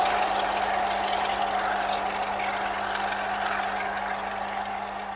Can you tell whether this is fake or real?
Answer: real